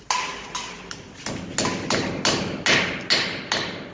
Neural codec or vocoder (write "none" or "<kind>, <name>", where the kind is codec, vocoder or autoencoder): none